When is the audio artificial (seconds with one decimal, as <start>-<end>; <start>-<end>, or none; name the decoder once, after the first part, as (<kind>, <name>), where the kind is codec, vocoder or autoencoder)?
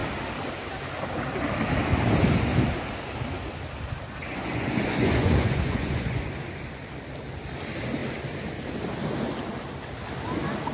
4.2-6.3 (vocoder, Vocos)